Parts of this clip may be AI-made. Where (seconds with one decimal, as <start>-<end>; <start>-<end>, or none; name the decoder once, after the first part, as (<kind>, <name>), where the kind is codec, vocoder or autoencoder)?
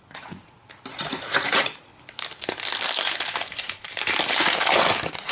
0.0-0.6 (vocoder, Vocos); 1.1-1.9